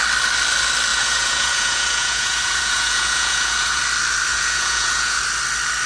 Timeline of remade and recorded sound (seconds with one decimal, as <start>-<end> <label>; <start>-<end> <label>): 0.0-0.9 recorded; 0.9-3.8 remade; 3.8-4.3 recorded; 4.3-5.2 remade; 5.2-5.9 recorded